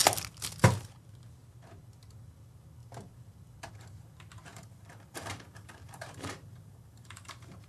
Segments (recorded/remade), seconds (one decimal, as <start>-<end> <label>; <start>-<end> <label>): 0.0-4.5 recorded; 4.5-7.7 remade

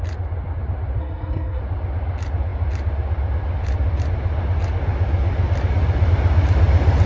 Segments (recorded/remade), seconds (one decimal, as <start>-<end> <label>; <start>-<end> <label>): 0.0-1.0 recorded; 1.0-1.6 remade; 1.6-7.1 recorded

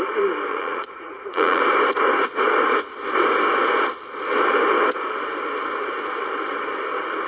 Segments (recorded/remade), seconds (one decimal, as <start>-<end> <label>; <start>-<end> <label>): 0.0-0.5 recorded; 0.5-1.6 remade; 1.6-7.3 recorded

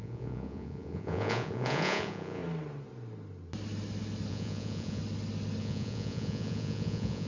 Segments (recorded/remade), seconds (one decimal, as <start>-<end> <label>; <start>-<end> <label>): 0.0-2.4 remade; 2.4-4.3 recorded; 4.3-5.0 remade; 5.0-5.6 recorded; 5.6-7.3 remade

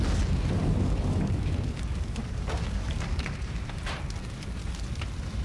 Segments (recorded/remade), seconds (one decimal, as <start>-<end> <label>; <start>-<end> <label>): 0.0-0.6 recorded; 0.6-3.8 remade; 3.8-5.4 recorded

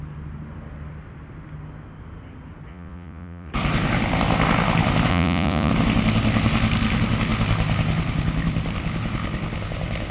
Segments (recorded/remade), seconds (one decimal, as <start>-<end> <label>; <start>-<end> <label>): 0.0-2.7 recorded; 2.7-3.5 remade; 3.5-5.1 recorded; 5.1-5.7 remade; 5.7-10.1 recorded